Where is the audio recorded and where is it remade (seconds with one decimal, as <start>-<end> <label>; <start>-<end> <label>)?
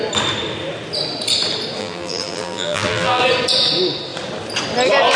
0.0-1.8 recorded; 1.8-3.2 remade; 3.2-5.2 recorded